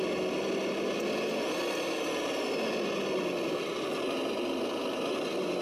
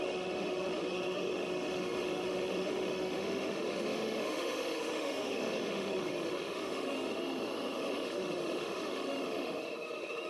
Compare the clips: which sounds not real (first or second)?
second